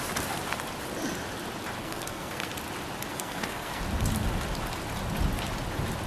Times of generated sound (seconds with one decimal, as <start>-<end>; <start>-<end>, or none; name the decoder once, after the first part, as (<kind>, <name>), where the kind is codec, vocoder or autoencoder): 1.8-2.5 (codec, SNAC); 3.1-3.8